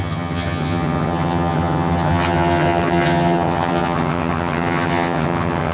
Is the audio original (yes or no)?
no